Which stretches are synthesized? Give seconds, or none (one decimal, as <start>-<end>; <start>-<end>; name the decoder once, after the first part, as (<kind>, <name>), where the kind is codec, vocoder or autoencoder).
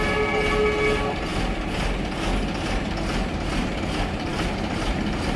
none